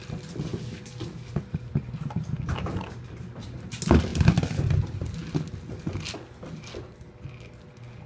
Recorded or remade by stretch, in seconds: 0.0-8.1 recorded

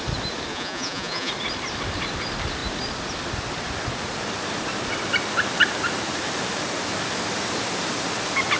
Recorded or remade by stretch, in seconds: 0.0-0.5 recorded; 0.5-1.3 remade; 1.3-8.6 recorded